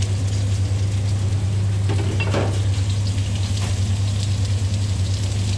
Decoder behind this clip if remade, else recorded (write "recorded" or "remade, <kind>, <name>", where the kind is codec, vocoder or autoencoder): recorded